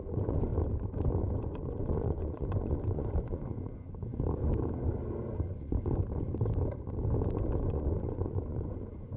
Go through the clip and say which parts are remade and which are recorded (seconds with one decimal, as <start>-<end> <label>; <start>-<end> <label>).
0.0-0.5 remade; 0.5-1.5 recorded; 1.5-4.4 remade; 4.4-5.4 recorded; 5.4-6.0 remade; 6.0-7.6 recorded; 7.6-9.2 remade